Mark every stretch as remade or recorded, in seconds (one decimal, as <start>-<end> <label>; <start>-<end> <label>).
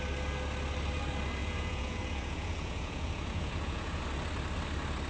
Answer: 0.0-1.4 recorded; 1.4-4.0 remade; 4.0-5.1 recorded